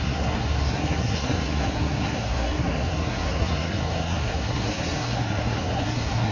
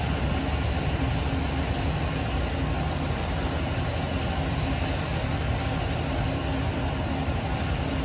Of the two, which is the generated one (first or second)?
first